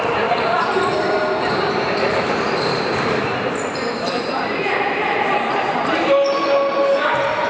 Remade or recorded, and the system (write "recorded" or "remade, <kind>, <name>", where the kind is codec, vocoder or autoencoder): remade, vocoder, BigVGAN v2